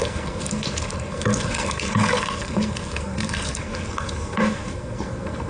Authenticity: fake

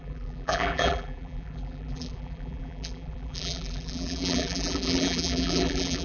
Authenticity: fake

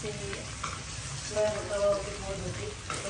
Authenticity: real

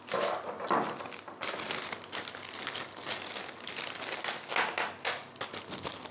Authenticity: real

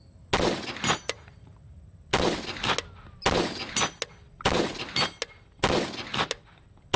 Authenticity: real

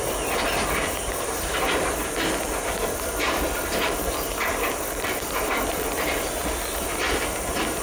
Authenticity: real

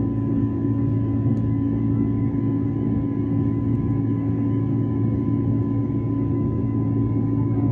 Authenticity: fake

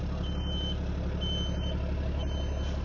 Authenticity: real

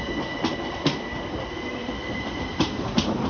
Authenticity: real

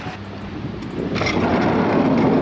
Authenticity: real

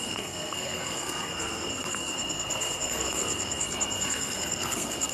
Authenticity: fake